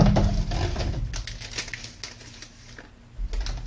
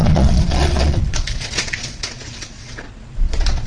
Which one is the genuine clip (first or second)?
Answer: first